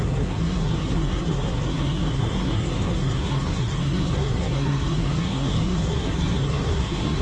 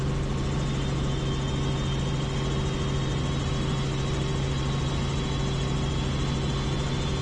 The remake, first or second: first